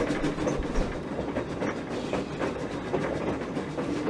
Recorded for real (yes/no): yes